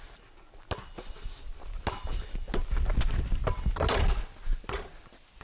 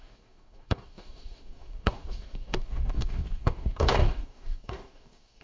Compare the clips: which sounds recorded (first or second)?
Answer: first